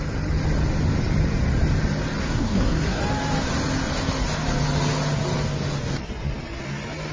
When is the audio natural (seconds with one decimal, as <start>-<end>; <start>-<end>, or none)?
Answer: 0.0-2.2; 3.0-7.1